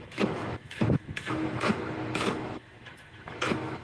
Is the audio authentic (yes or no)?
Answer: no